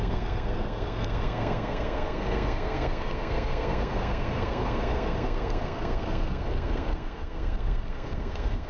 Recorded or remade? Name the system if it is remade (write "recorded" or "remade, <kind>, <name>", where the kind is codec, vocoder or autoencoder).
remade, codec, SNAC